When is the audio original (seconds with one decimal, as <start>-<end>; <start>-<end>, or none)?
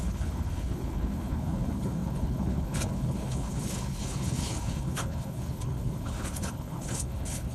none